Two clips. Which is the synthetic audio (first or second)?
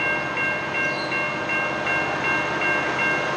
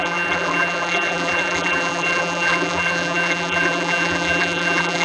second